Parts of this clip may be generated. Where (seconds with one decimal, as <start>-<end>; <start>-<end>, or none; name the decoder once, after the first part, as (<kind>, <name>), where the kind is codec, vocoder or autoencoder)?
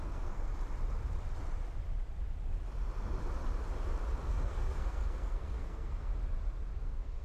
0.0-0.5 (codec, SNAC); 4.3-6.1; 6.8-7.2